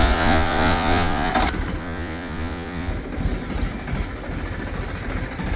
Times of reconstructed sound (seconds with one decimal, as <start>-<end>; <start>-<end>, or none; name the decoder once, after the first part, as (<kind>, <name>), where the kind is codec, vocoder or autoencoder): 0.0-1.3 (vocoder, Vocos); 1.8-2.9